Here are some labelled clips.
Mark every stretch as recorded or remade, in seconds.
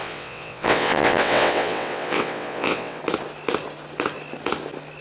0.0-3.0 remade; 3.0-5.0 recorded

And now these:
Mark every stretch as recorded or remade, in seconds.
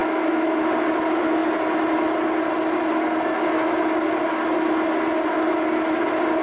0.0-0.6 remade; 0.6-6.4 recorded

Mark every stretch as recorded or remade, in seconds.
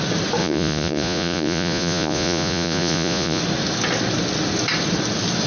0.0-0.4 recorded; 0.4-3.4 remade; 3.4-5.5 recorded